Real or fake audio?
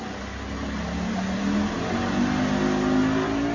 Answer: real